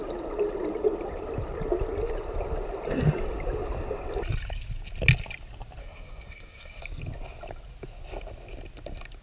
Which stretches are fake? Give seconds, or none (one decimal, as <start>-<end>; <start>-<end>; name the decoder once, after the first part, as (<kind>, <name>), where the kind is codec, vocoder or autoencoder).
5.8-6.8 (codec, SNAC)